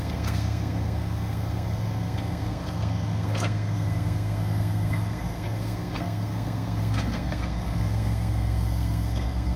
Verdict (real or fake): fake